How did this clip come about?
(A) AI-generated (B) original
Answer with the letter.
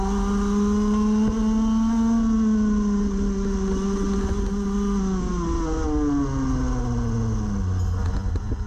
B